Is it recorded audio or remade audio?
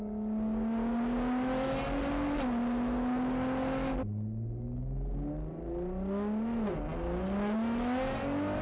recorded